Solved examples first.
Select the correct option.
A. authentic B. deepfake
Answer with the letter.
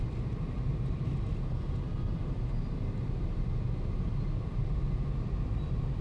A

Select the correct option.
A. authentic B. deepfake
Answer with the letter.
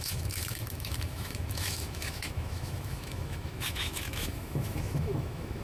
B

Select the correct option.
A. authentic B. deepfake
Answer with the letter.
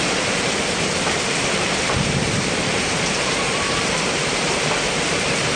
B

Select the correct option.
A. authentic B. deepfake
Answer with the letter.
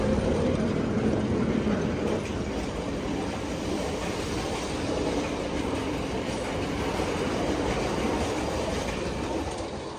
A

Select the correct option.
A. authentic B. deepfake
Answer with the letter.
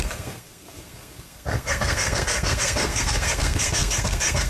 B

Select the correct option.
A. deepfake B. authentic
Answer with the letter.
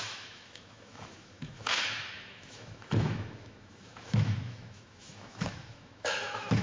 A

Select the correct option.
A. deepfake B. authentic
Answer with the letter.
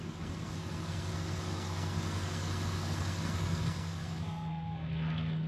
A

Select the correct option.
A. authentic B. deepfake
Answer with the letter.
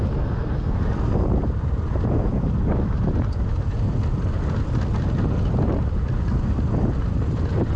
A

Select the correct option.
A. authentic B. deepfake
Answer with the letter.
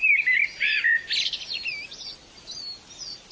A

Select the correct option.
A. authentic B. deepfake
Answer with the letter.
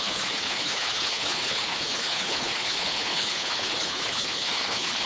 B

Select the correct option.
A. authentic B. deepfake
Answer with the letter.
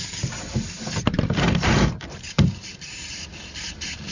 B